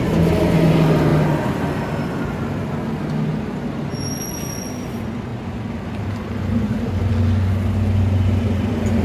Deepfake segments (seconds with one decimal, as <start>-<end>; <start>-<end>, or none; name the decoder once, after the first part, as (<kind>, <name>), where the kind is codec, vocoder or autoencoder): 3.3-3.9 (vocoder, BigVGAN v2); 5.3-7.1